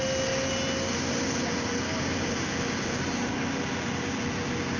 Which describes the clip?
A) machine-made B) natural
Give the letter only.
B